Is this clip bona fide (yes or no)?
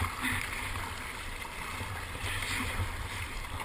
yes